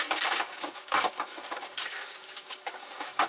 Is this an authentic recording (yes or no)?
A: no